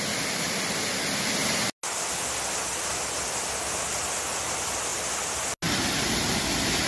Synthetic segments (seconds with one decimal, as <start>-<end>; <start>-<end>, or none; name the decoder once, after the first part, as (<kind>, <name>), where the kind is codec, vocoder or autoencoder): none